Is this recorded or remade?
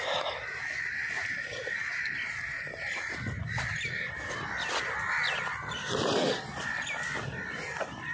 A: recorded